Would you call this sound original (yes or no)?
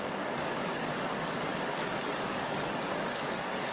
no